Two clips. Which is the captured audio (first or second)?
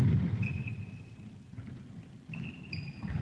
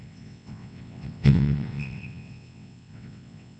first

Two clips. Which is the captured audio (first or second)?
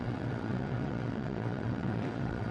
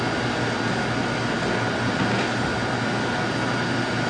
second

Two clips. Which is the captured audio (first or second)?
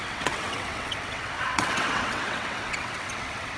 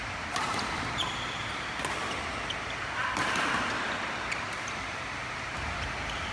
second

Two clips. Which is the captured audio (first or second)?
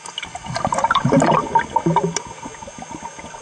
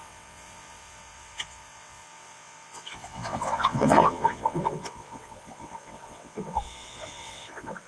first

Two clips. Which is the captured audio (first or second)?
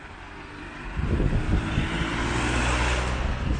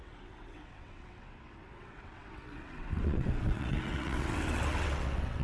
first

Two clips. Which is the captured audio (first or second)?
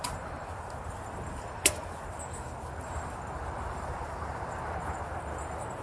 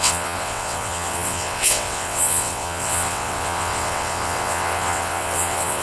first